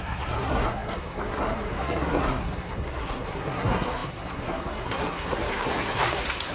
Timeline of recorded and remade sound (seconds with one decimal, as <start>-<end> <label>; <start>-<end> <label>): 0.0-6.5 remade